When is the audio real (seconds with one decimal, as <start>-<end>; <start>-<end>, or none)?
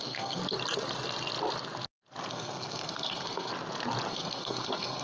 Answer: 0.4-2.3; 3.5-4.1